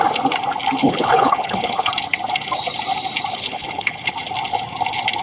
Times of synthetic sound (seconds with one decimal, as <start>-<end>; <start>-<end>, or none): 0.8-1.9; 3.3-4.1